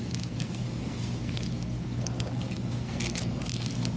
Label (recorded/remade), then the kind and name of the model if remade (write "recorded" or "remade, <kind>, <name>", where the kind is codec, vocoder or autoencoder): remade, codec, SNAC